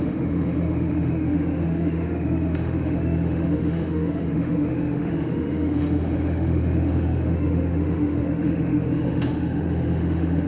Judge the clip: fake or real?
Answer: fake